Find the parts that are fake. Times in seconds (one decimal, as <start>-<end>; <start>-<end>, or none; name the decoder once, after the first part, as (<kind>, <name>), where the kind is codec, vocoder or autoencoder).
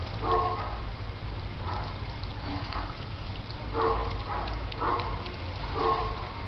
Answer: 2.5-3.3 (codec, SNAC)